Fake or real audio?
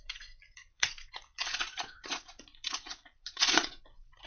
fake